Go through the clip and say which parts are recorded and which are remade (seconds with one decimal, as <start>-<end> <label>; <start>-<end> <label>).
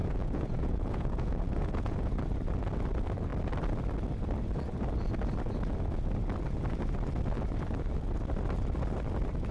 0.0-2.1 remade; 2.1-9.5 recorded